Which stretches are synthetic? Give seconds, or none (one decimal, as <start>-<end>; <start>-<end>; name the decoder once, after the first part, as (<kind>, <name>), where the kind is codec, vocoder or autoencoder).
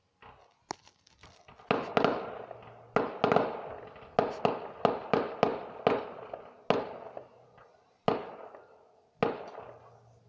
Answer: none